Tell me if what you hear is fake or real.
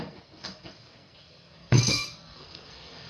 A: fake